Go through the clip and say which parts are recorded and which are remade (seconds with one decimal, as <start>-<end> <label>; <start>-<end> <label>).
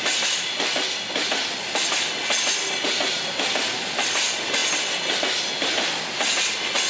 0.0-6.9 recorded